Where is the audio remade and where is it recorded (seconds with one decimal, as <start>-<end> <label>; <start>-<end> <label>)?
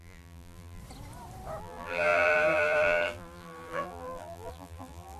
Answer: 0.0-0.8 remade; 0.8-1.6 recorded; 1.6-5.2 remade